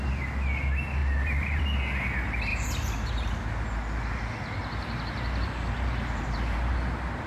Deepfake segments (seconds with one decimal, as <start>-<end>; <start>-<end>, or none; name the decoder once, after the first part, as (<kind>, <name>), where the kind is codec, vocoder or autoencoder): 1.0-1.6 (vocoder, BigVGAN v2); 2.5-3.3; 4.6-6.8

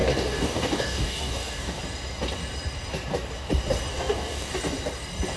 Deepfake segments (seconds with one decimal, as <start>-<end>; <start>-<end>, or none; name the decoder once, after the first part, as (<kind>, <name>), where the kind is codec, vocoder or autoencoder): 0.0-1.8 (codec, DAC); 3.9-4.5